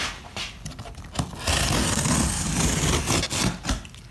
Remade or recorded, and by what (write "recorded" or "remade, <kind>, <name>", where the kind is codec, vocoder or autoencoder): recorded